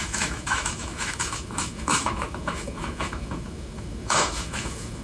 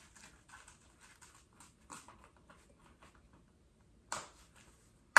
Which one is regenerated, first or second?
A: first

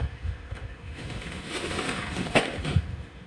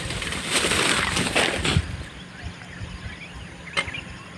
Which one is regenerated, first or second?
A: first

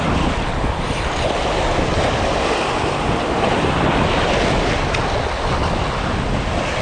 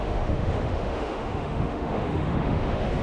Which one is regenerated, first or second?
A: second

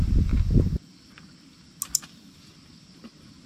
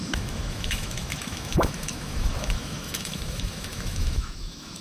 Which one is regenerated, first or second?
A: second